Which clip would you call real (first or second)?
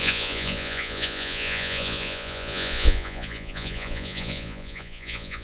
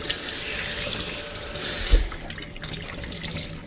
second